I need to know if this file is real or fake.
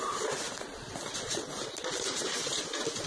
real